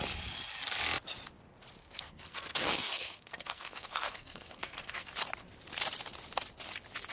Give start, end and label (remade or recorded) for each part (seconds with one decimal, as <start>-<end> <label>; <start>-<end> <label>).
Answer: 0.0-1.8 recorded; 1.8-5.1 remade; 5.1-7.1 recorded